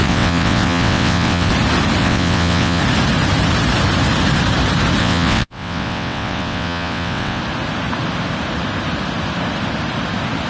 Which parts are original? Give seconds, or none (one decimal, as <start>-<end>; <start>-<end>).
1.5-2.0; 2.8-5.0; 7.4-10.5